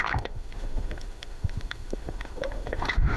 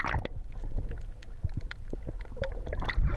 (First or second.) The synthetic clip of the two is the first